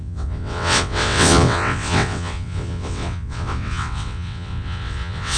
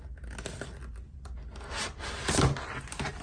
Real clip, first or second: second